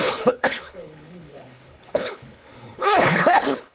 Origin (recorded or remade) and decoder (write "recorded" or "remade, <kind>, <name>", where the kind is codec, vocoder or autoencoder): remade, codec, HILCodec